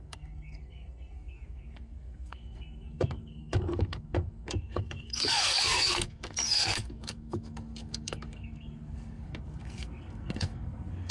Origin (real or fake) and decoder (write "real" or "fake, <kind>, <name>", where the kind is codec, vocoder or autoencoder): fake, codec, SNAC